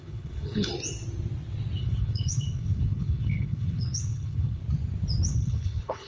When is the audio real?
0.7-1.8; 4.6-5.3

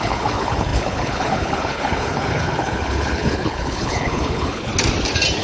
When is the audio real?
4.7-5.4